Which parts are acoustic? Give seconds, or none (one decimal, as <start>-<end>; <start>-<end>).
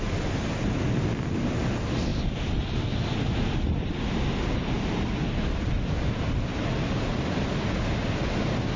0.0-8.8